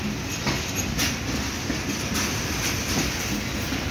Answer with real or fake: real